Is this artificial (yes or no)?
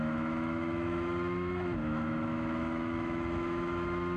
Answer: yes